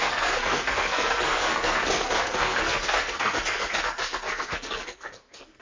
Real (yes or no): no